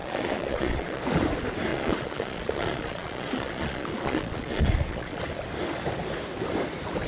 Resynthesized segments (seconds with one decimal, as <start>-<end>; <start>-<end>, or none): 0.0-1.0; 1.7-5.2